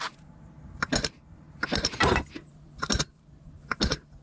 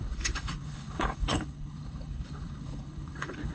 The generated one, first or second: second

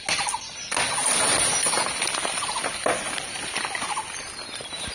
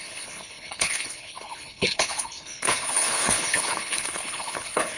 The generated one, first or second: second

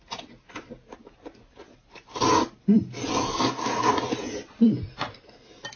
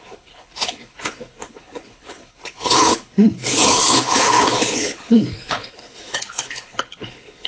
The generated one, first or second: second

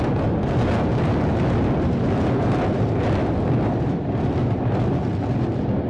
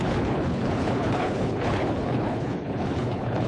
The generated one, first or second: second